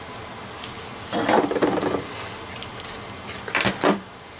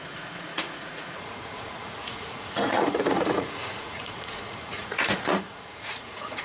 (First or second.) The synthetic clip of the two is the second